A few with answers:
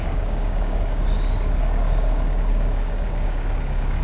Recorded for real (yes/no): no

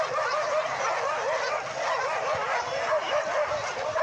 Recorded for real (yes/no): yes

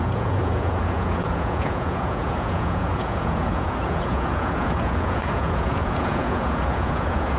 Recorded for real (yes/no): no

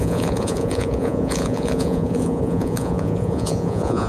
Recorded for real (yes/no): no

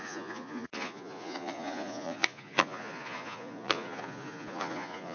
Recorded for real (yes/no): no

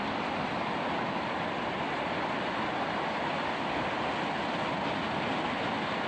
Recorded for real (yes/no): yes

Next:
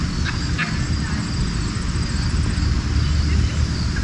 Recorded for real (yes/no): yes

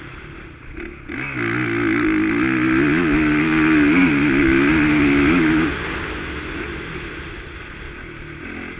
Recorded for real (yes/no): yes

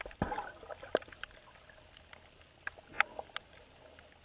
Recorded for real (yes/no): yes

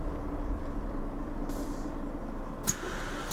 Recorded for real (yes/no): yes